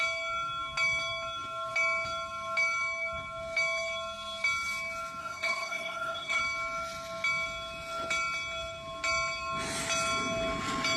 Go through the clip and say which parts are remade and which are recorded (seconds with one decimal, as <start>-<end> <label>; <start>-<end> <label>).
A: 0.0-5.2 recorded; 5.2-6.4 remade; 6.4-11.0 recorded